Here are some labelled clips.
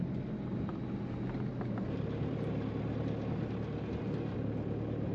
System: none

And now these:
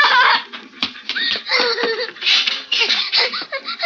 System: vocoder, BigVGAN v2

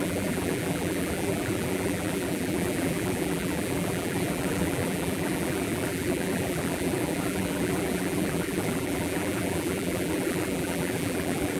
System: vocoder, BigVGAN v2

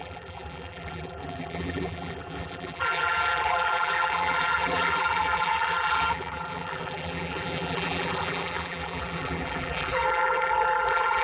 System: vocoder, BigVGAN v2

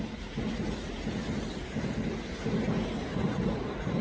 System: none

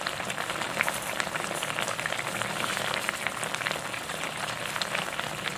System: vocoder, BigVGAN v2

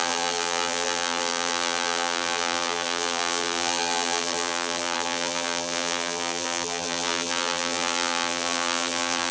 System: vocoder, BigVGAN v2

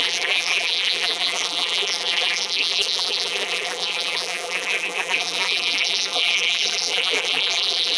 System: vocoder, BigVGAN v2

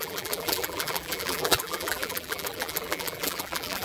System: vocoder, BigVGAN v2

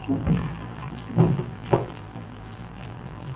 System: vocoder, BigVGAN v2